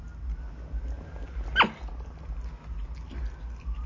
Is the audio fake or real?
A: real